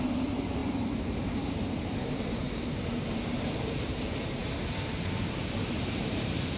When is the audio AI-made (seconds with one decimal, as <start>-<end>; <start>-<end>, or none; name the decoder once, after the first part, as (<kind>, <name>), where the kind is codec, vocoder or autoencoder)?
0.0-6.6 (vocoder, BigVGAN v2)